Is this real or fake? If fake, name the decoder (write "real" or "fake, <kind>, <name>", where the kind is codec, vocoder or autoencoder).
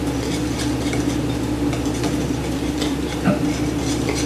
real